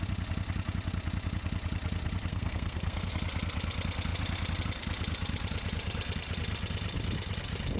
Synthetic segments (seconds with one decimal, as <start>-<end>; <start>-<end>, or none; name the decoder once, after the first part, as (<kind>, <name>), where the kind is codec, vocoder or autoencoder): 2.3-3.1 (codec, SNAC)